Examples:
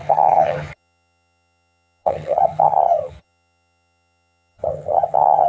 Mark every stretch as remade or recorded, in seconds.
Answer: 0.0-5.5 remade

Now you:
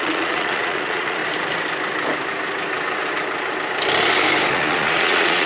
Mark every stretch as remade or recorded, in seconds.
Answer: 0.0-1.2 remade; 1.2-4.5 recorded; 4.5-5.5 remade

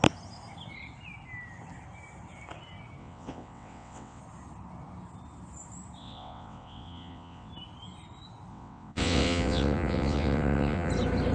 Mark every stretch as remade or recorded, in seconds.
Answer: 0.0-3.0 recorded; 3.0-4.2 remade; 4.2-6.0 recorded; 6.0-7.5 remade; 7.5-8.5 recorded; 8.5-10.9 remade; 10.9-11.3 recorded